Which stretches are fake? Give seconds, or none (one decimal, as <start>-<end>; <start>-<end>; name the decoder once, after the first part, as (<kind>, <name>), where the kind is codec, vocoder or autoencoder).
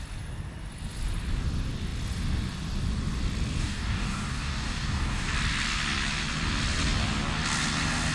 3.6-5.3 (codec, DAC)